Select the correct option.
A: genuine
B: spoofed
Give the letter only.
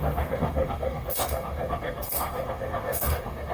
B